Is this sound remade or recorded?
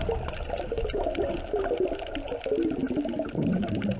recorded